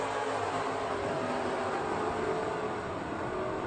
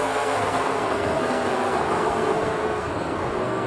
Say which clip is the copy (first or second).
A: second